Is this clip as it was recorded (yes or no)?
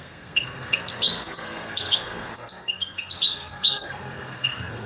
no